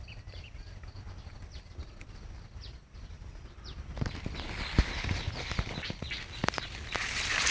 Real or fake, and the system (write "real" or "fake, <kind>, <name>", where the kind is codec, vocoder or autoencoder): real